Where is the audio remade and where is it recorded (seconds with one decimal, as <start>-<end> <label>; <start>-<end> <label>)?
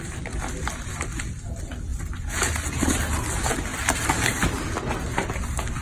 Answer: 0.0-1.9 recorded; 1.9-2.4 remade; 2.4-5.8 recorded